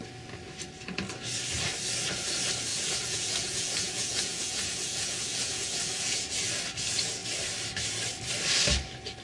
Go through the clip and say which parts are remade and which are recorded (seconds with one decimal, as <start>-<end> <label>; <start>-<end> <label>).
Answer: 0.0-2.7 recorded; 2.7-6.6 remade; 6.6-9.2 recorded